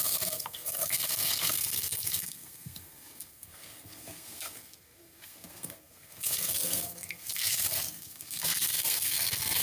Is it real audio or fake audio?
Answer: fake